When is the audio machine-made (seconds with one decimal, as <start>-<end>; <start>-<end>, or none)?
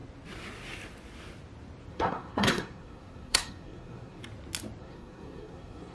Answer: 1.9-4.2; 4.8-5.9